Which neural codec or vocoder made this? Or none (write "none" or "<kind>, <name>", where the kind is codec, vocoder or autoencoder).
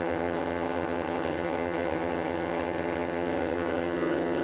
vocoder, HiFi-GAN